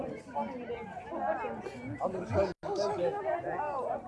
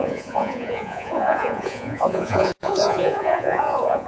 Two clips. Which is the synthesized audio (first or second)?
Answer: second